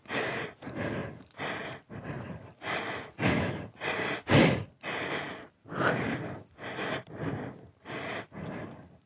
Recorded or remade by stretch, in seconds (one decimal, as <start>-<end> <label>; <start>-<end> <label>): 0.0-9.1 recorded

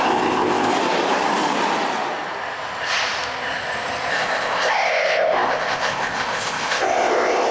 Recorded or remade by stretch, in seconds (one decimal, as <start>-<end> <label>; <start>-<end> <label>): 0.0-0.7 remade; 0.7-4.1 recorded; 4.1-7.5 remade

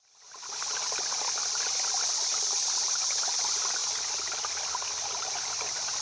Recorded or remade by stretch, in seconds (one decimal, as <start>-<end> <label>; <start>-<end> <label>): 0.0-6.0 recorded

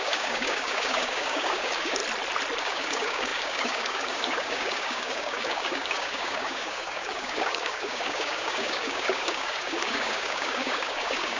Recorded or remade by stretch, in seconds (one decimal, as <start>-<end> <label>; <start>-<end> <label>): 0.0-2.0 remade; 2.0-2.6 recorded; 2.6-11.4 remade

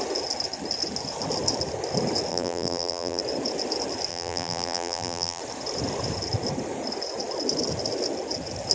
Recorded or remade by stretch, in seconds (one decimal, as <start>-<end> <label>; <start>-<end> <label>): 0.0-2.3 recorded; 2.3-3.2 remade; 3.2-4.1 recorded; 4.1-5.4 remade; 5.4-8.7 recorded

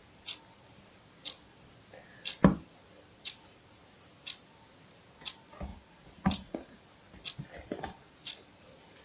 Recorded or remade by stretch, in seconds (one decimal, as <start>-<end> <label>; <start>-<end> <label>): 0.0-5.7 recorded; 5.7-6.8 remade; 6.8-9.0 recorded

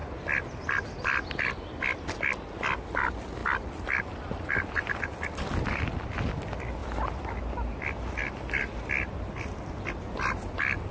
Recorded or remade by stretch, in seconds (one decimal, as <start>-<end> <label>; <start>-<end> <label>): 0.0-3.4 recorded; 3.4-4.9 remade; 4.9-6.8 recorded; 6.8-8.9 remade; 8.9-10.9 recorded

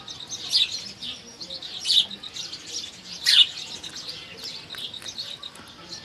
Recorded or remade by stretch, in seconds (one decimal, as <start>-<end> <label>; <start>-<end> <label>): 0.0-2.4 recorded; 2.4-2.9 remade; 2.9-6.0 recorded